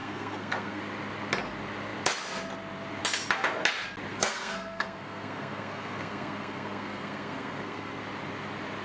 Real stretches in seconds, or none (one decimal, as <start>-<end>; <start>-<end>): 0.8-4.1; 8.0-8.8